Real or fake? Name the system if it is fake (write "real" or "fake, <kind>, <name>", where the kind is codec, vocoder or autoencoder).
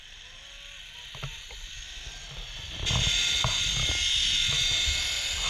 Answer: real